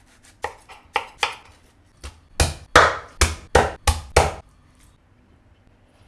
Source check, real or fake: real